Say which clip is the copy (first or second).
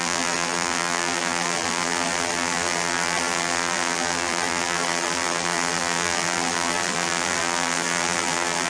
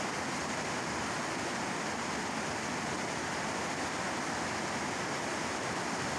first